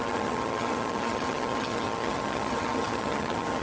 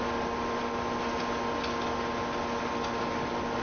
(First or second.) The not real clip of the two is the first